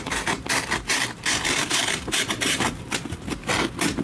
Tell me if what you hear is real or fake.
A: real